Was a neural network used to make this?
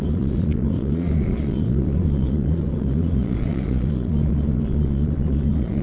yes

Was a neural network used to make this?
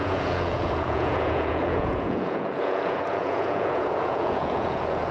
yes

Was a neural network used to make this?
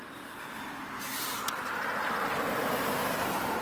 no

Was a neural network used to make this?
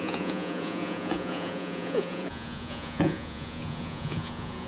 yes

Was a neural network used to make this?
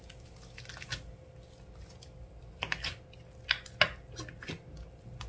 no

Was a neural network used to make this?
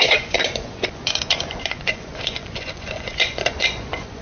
yes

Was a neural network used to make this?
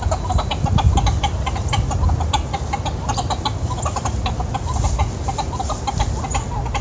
no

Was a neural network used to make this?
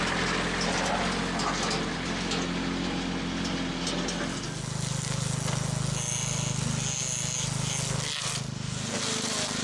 no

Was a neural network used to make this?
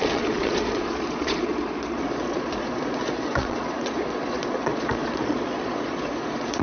yes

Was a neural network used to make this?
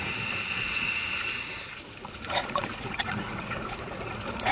yes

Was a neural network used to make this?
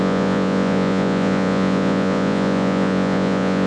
yes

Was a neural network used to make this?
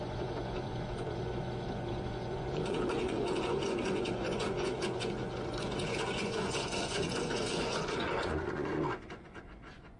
yes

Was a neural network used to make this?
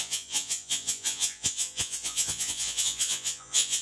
yes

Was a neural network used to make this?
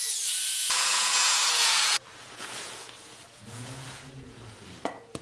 yes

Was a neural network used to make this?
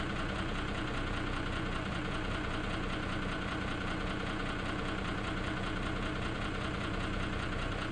yes